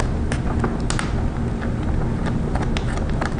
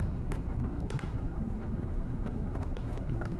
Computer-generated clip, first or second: second